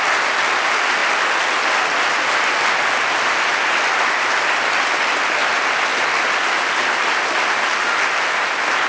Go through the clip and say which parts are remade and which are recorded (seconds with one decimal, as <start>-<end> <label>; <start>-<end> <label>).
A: 0.0-8.9 recorded